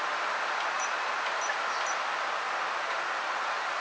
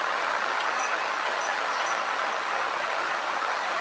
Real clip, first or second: first